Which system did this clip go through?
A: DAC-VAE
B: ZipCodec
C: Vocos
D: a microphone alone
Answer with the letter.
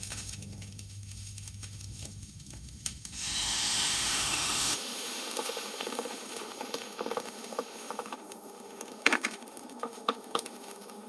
A